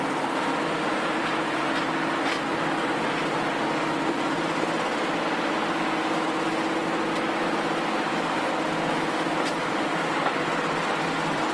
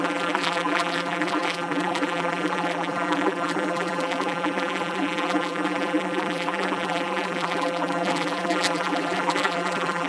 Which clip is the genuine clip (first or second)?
first